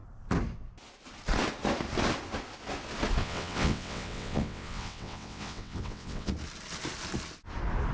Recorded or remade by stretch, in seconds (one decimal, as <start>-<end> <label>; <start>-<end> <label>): 0.0-3.2 recorded; 3.2-6.3 remade; 6.3-7.9 recorded